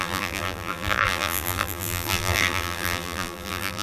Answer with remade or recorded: remade